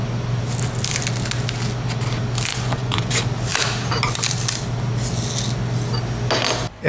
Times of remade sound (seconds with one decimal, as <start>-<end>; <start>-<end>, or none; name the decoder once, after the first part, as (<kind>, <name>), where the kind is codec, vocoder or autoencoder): 2.5-3.1 (vocoder, Vocos)